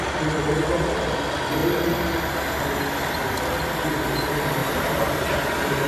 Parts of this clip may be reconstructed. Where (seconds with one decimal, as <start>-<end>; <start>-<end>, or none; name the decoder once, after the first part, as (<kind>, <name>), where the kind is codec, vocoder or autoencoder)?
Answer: 4.6-5.3 (vocoder, BigVGAN v2)